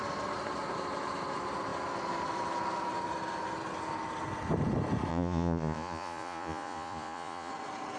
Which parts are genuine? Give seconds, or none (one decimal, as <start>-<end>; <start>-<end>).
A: 0.0-5.1; 7.5-8.0